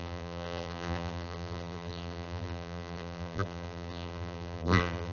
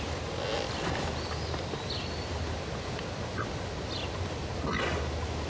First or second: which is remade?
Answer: first